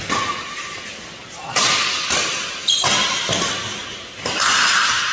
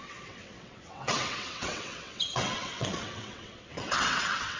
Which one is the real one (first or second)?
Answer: first